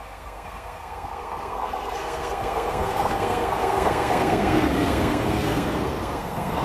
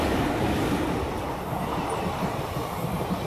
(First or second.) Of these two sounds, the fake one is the first